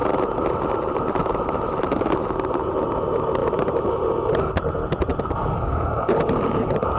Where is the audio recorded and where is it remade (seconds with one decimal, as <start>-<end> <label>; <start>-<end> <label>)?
0.0-3.4 recorded; 3.4-4.4 remade; 4.4-5.1 recorded; 5.1-7.0 remade